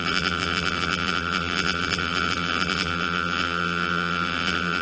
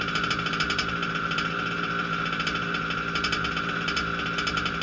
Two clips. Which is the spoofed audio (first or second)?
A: first